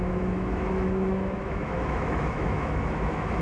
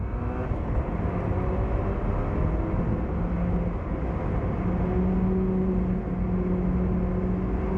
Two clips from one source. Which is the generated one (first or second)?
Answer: first